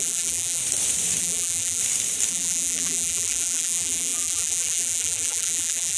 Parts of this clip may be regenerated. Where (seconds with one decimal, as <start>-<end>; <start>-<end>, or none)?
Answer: 0.0-0.6; 1.2-1.8; 2.3-6.0